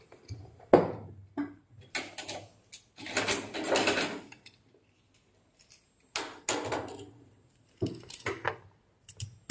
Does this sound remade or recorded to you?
recorded